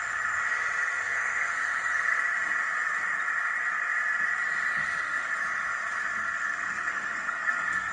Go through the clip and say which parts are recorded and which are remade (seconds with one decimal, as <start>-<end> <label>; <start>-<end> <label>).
0.0-1.1 recorded; 1.1-2.2 remade; 2.2-4.8 recorded; 4.8-5.3 remade; 5.3-6.2 recorded; 6.2-7.9 remade